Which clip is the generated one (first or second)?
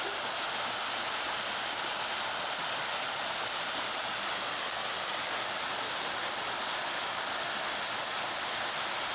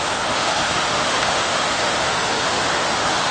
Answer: second